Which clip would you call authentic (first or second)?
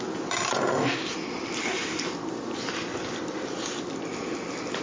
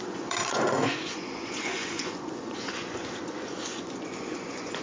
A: first